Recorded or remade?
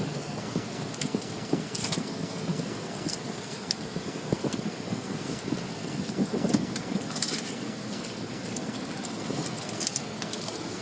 remade